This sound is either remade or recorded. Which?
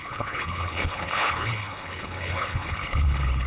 remade